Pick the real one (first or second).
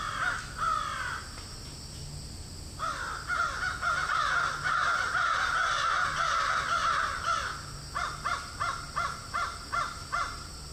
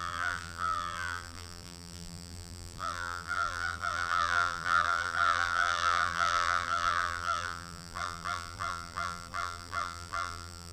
first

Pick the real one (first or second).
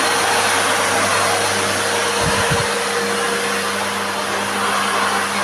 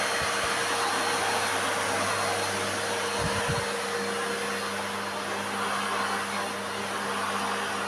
second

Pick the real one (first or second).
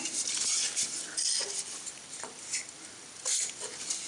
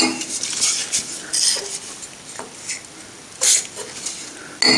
second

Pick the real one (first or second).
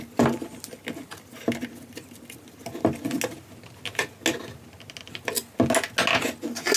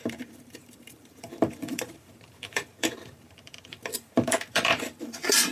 first